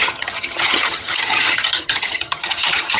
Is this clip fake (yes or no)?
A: yes